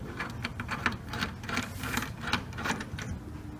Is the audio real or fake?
real